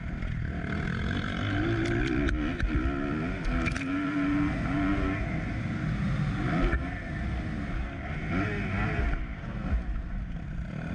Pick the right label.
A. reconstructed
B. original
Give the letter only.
B